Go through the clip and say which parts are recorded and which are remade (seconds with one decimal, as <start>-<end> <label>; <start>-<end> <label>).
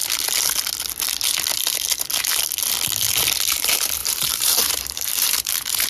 0.0-3.5 recorded; 3.5-5.9 remade